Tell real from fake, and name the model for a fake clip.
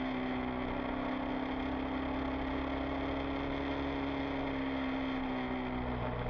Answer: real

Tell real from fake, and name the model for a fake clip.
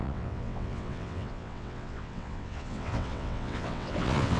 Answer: fake, vocoder, WaveNeXt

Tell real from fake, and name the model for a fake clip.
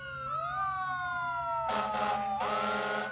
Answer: real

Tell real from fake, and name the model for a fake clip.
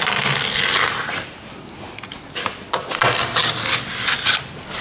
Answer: real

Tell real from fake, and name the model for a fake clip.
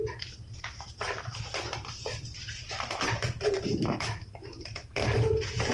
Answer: fake, vocoder, BigVGAN v2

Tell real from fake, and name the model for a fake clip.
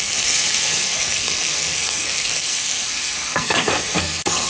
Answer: fake, codec, SNAC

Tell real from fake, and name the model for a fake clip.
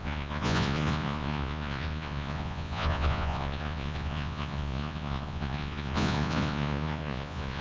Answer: fake, vocoder, Vocos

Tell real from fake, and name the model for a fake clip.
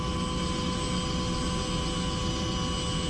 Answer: real